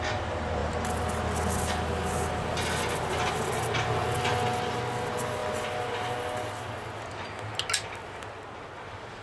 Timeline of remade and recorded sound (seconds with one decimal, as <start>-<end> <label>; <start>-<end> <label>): 0.0-9.2 recorded